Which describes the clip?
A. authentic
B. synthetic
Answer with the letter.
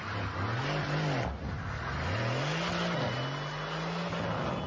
A